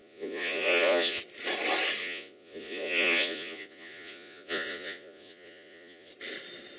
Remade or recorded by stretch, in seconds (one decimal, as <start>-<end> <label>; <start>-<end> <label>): 0.0-1.2 remade; 1.2-2.0 recorded; 2.0-6.1 remade; 6.1-6.8 recorded